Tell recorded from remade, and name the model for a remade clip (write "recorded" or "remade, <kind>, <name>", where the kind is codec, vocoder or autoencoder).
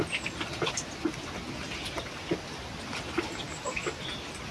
recorded